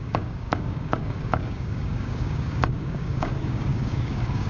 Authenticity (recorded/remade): remade